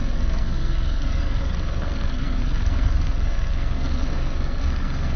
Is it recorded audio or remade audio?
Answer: remade